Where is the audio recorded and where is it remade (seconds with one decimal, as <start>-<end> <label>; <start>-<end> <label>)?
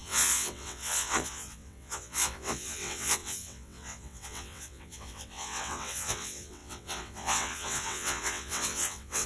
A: 0.0-9.3 remade